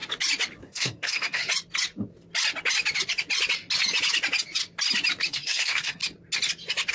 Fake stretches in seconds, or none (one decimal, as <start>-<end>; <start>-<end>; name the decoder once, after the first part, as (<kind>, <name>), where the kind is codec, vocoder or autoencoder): 0.6-1.4 (codec, SNAC); 5.3-6.0